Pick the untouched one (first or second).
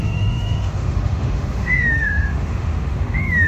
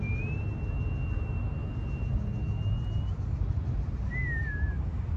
second